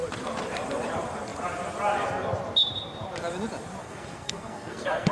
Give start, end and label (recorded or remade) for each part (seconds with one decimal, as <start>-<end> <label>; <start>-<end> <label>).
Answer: 0.0-3.8 recorded; 3.8-5.1 remade